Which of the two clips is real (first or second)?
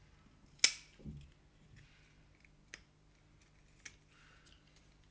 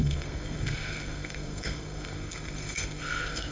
first